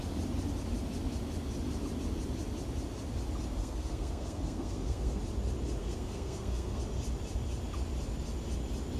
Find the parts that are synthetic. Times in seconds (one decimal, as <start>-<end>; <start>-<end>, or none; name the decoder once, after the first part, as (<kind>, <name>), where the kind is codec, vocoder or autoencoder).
3.6-5.2 (codec, SNAC); 5.8-6.8